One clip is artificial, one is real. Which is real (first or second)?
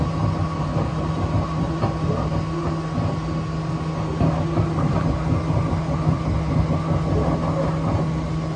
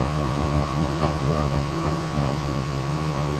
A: first